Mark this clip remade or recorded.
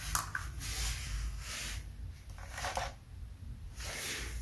recorded